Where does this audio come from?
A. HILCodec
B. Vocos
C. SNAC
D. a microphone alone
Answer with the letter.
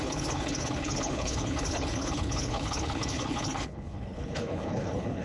A